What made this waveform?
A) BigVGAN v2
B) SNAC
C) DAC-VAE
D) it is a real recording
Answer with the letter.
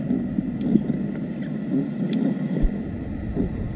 D